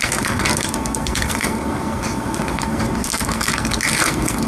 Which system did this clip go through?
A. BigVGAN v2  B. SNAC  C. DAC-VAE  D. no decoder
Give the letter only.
B